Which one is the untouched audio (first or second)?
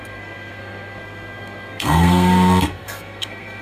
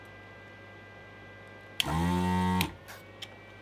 second